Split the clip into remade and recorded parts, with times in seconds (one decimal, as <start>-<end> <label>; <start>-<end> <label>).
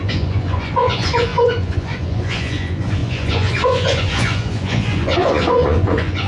0.0-6.3 remade